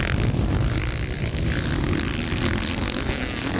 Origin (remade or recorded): recorded